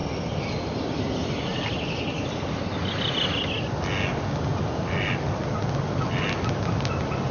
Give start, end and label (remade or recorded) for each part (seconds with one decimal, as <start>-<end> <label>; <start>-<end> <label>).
0.0-7.3 recorded